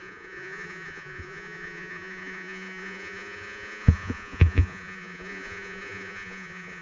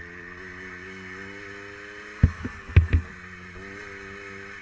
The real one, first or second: second